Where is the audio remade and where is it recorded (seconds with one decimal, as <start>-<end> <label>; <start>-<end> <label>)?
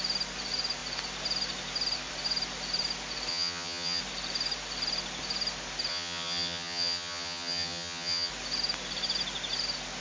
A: 0.0-3.3 recorded; 3.3-4.0 remade; 4.0-5.9 recorded; 5.9-8.3 remade; 8.3-10.0 recorded